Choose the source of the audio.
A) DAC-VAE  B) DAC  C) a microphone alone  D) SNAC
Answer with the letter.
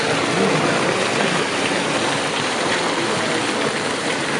C